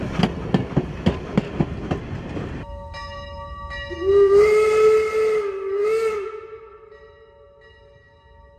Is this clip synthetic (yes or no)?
no